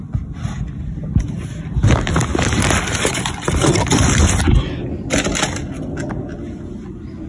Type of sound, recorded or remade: recorded